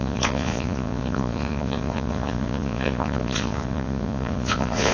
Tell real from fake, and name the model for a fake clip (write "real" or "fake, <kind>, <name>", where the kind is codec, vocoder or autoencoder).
fake, vocoder, Vocos